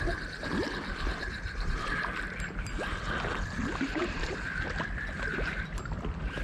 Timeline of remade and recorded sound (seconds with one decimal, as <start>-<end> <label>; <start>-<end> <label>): 0.0-1.1 recorded; 1.1-1.9 remade; 1.9-4.0 recorded; 4.0-4.7 remade; 4.7-6.4 recorded